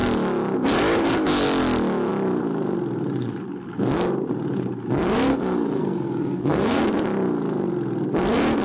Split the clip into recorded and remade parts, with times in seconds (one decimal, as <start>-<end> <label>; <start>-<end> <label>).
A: 0.0-5.3 recorded; 5.3-6.8 remade; 6.8-8.6 recorded